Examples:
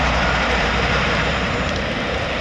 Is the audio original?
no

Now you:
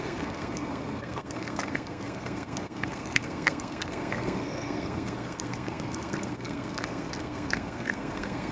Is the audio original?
no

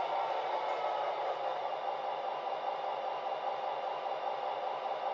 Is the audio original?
no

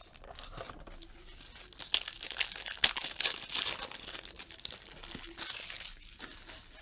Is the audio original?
yes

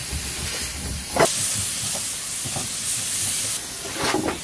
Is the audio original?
no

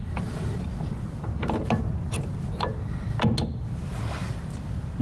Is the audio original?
yes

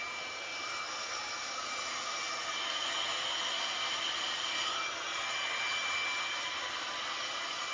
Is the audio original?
yes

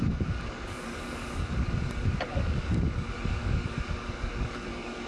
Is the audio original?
no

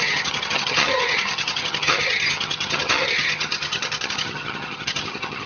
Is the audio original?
no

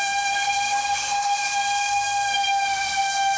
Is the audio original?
no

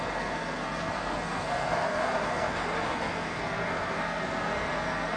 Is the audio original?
no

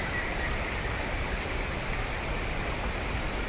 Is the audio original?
yes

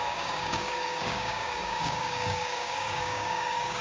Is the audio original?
no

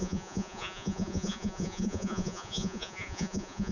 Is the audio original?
no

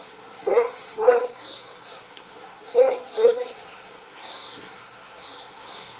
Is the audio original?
no